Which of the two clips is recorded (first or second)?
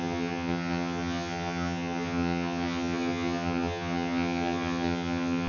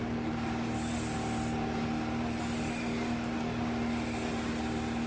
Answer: second